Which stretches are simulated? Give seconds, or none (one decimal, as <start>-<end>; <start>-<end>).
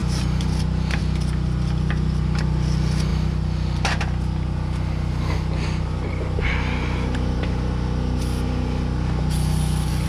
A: none